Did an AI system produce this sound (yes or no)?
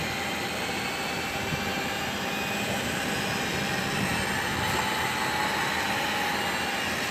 no